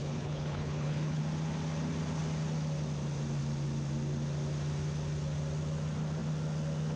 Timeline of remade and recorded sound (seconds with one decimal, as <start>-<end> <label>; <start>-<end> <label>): 0.0-1.2 remade; 1.2-7.0 recorded